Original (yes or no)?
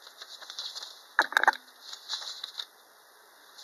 yes